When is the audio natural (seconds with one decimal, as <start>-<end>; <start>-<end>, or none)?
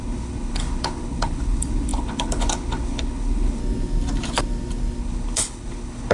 3.6-5.0